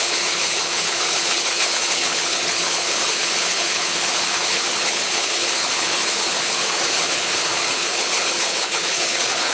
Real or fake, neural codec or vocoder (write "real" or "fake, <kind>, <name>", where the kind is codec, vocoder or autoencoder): fake, codec, HILCodec